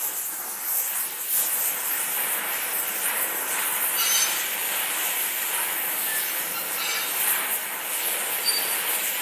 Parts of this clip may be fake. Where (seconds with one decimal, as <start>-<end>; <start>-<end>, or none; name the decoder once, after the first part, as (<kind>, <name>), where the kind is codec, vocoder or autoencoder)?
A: 4.0-9.2 (vocoder, BigVGAN v2)